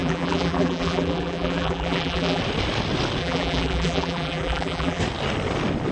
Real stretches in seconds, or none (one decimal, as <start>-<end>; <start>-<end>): 2.4-3.2; 5.0-5.9